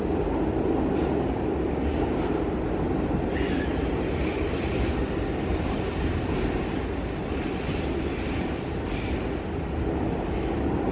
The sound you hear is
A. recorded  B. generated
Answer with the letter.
A